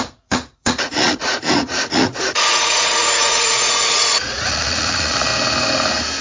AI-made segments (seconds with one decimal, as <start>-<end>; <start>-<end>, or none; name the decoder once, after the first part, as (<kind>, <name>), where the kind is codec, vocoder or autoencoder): 0.0-5.3 (vocoder, Vocos)